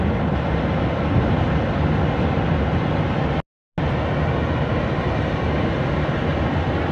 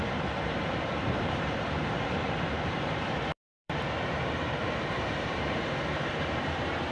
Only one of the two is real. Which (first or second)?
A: first